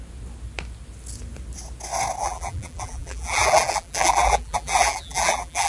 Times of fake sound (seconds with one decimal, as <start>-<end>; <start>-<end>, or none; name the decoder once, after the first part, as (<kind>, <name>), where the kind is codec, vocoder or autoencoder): 2.2-5.7 (vocoder, BigVGAN v2)